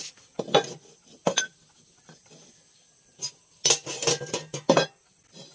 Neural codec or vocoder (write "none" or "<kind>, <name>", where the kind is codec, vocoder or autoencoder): none